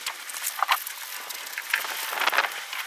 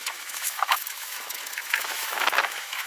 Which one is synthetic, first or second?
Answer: second